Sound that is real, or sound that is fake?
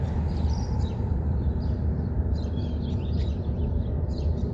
fake